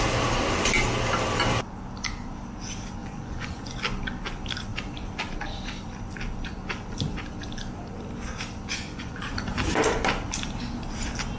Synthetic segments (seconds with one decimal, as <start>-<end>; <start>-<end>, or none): 3.0-3.8; 8.7-9.3